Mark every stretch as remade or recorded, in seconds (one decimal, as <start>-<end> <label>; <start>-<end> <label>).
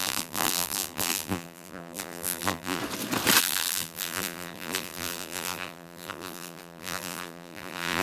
0.0-2.8 remade; 2.8-3.4 recorded; 3.4-8.0 remade